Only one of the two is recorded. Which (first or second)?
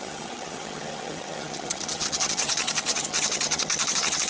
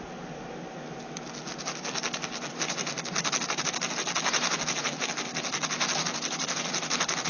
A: second